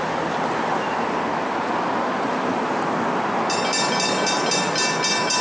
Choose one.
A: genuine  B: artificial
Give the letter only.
A